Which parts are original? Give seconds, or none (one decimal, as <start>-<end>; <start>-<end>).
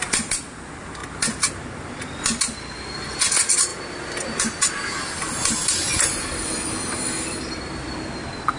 0.0-8.6